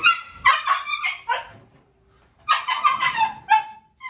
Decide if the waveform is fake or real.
real